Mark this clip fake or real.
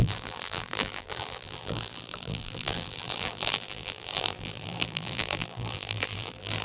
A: fake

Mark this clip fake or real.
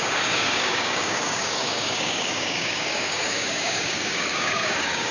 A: fake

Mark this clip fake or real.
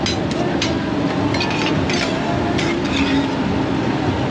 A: real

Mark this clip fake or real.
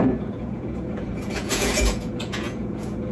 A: fake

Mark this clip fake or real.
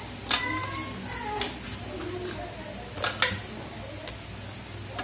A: real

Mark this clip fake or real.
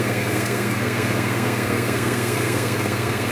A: fake